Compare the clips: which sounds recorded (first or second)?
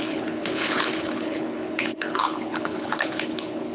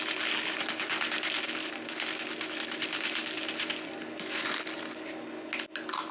second